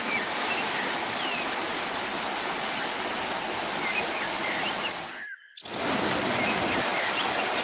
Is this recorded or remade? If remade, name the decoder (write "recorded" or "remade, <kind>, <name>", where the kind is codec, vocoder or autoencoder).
recorded